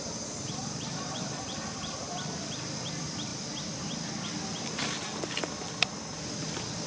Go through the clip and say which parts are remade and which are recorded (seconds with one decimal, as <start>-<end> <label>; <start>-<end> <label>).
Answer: 0.0-0.6 recorded; 0.6-2.2 remade; 2.2-6.9 recorded